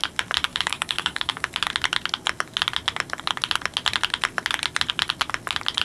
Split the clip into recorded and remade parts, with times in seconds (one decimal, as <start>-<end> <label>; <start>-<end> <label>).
0.0-0.5 recorded; 0.5-1.5 remade; 1.5-5.8 recorded